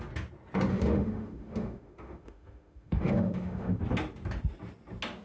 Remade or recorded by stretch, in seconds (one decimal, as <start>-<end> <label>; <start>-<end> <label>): 0.0-0.7 recorded; 0.7-3.8 remade; 3.8-5.2 recorded